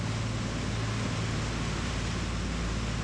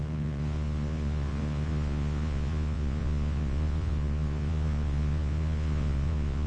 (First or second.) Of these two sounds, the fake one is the second